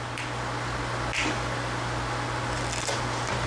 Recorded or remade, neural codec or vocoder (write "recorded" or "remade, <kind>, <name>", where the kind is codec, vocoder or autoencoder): recorded